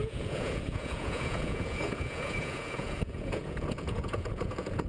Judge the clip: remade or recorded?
remade